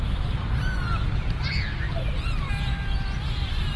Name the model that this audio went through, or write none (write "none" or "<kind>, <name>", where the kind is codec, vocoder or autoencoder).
none